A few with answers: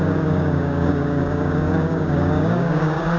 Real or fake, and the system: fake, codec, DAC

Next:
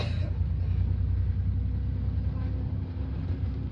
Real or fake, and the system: real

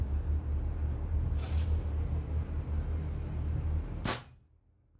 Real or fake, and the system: real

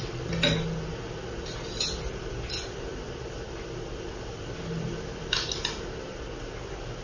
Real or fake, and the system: real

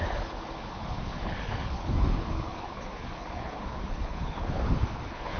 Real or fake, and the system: fake, codec, HILCodec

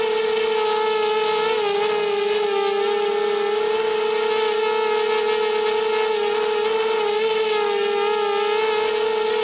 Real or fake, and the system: real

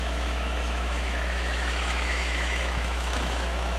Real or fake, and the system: fake, autoencoder, DAC-VAE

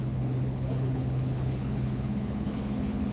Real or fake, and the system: fake, codec, HILCodec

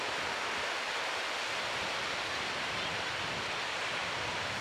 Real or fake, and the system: real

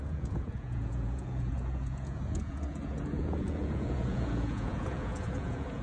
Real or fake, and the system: fake, vocoder, Vocos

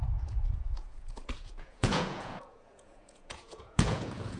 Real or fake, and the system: fake, vocoder, Vocos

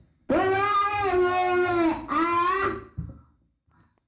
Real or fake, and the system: real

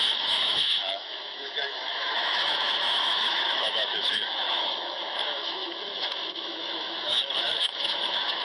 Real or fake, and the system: fake, autoencoder, DAC-VAE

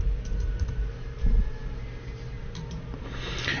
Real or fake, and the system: fake, vocoder, BigVGAN v2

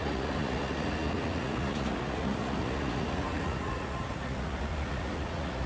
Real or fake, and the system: fake, vocoder, Vocos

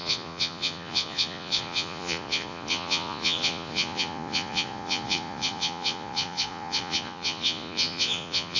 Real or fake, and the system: fake, vocoder, Vocos